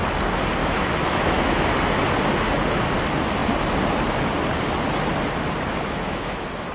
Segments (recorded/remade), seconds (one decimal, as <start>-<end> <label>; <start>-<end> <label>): 0.0-0.6 recorded; 0.6-1.7 remade; 1.7-5.7 recorded; 5.7-6.7 remade